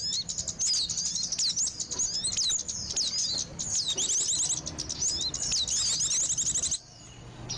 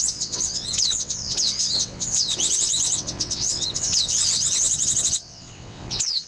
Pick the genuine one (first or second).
first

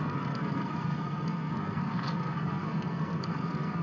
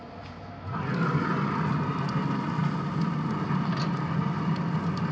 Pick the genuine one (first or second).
second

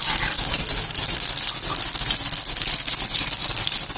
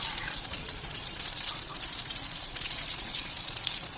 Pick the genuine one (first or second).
first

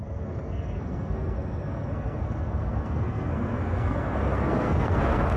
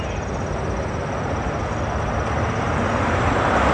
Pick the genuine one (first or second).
second